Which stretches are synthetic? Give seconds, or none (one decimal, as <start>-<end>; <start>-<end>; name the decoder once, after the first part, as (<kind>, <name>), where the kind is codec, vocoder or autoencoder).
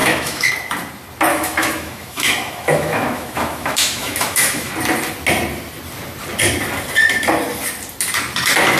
0.0-0.5 (autoencoder, DAC-VAE); 1.3-4.7